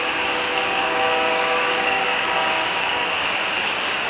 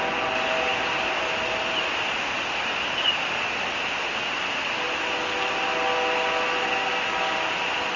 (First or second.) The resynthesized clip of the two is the first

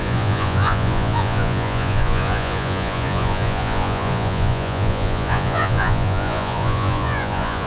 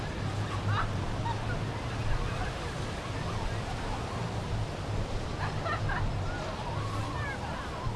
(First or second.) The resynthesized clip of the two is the first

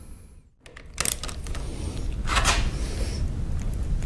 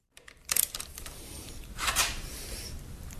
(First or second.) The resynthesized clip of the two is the second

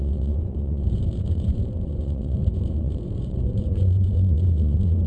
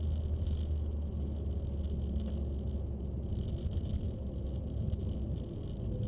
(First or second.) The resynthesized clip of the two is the first